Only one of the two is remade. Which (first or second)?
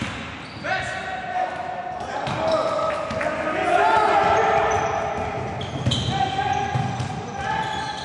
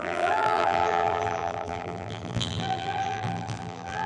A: second